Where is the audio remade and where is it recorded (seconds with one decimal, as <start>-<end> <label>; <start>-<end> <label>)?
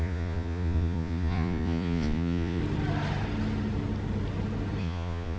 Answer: 0.0-2.6 remade; 2.6-4.8 recorded; 4.8-5.4 remade